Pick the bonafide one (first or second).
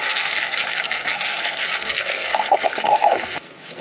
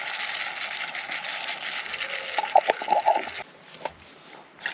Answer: second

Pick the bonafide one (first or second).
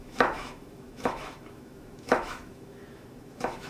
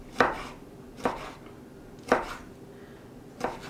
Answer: second